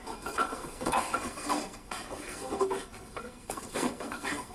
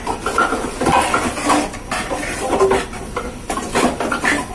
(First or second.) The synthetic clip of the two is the first